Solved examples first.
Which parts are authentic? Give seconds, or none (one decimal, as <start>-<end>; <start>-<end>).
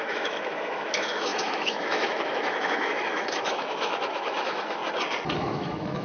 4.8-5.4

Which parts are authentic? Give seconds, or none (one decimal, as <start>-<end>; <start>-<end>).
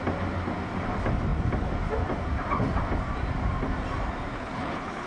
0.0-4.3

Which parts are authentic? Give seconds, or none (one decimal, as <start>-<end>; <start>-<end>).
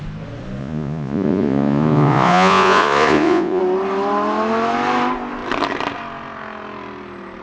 0.0-0.6; 3.6-7.4